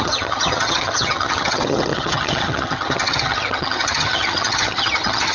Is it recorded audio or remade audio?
remade